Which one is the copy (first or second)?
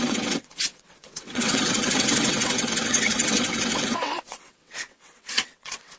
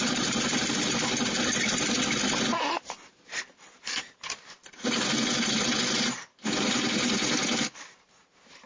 first